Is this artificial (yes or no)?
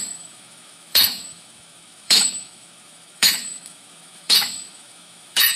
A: yes